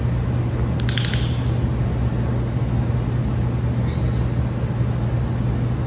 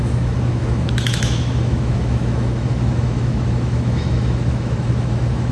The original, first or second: first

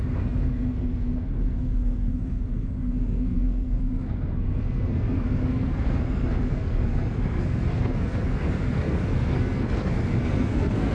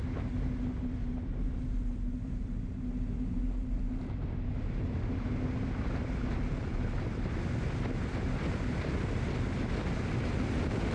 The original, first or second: second